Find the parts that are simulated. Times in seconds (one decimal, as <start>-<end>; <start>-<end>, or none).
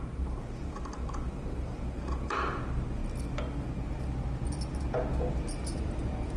0.0-3.0; 5.8-6.4